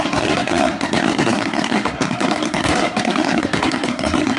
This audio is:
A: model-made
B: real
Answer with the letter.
A